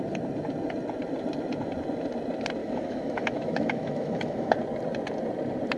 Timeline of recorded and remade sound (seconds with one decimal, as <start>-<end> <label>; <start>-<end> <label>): 0.0-2.6 recorded; 2.6-4.5 remade; 4.5-5.8 recorded